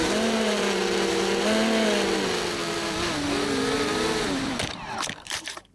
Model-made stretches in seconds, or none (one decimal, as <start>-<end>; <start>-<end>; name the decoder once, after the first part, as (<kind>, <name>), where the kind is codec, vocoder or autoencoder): 0.0-0.8 (vocoder, BigVGAN v2); 4.2-5.7